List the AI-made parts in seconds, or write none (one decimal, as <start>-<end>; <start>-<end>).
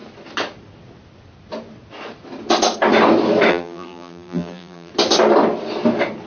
3.5-4.9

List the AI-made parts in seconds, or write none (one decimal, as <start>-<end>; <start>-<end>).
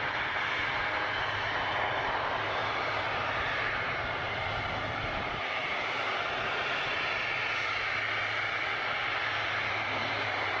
0.0-5.6; 9.5-10.6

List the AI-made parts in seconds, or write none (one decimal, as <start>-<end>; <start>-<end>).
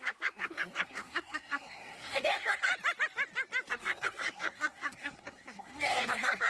0.0-2.7; 3.7-6.5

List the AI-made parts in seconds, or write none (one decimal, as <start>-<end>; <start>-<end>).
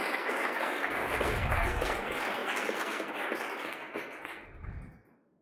0.0-5.4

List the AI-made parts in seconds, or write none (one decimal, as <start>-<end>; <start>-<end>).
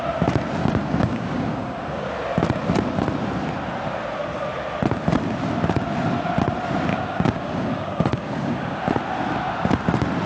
0.6-2.1; 6.9-8.8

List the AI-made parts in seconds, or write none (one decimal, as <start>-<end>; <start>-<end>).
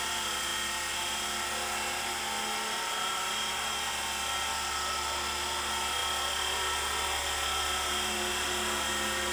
none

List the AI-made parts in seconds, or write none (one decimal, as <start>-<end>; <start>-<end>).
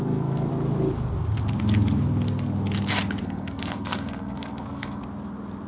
0.0-0.5; 3.2-5.0